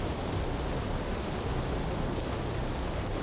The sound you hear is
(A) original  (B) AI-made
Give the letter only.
A